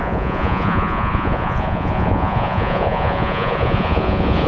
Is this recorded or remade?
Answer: remade